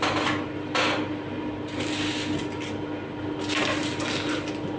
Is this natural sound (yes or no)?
yes